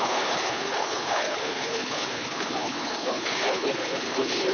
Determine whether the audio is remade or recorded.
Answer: remade